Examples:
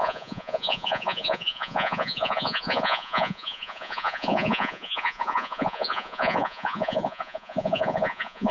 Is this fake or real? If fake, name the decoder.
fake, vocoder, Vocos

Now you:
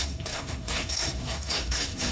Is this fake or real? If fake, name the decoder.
fake, codec, SNAC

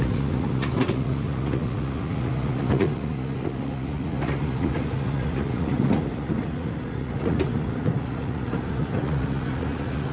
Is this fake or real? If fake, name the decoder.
fake, vocoder, Vocos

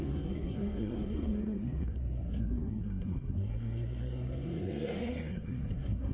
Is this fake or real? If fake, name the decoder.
fake, codec, SNAC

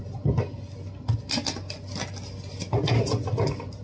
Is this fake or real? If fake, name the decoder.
real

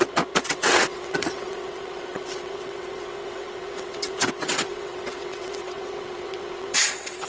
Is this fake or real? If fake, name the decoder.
fake, vocoder, WaveNeXt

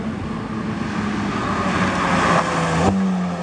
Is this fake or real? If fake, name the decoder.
real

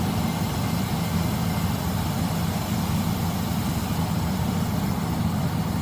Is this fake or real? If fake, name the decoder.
real